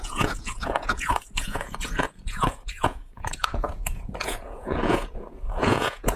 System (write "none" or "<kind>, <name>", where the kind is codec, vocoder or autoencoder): vocoder, Vocos